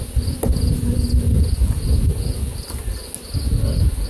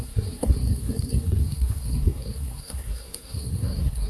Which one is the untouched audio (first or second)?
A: first